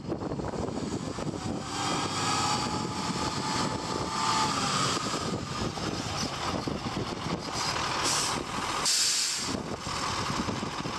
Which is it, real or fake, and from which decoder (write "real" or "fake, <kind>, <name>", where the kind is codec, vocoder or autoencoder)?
real